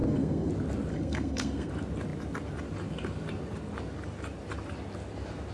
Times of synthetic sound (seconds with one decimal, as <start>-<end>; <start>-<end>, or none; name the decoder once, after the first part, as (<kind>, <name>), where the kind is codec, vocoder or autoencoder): 0.0-0.5 (codec, SNAC); 0.9-1.7